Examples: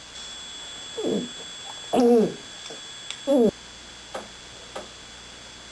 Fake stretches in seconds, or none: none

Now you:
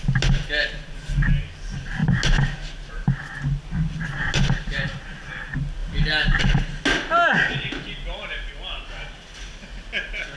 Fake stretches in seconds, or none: none

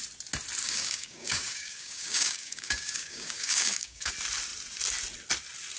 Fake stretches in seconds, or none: 0.6-4.1

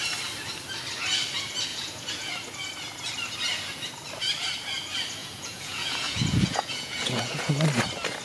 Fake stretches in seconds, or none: 1.7-2.3; 5.2-7.5